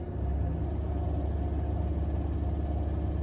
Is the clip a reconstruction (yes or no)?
no